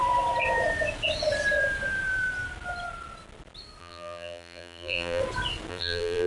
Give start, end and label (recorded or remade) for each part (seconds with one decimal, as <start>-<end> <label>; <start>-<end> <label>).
0.0-3.8 recorded; 3.8-5.2 remade; 5.2-5.7 recorded; 5.7-6.3 remade